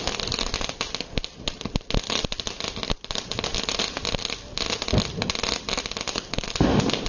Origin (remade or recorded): recorded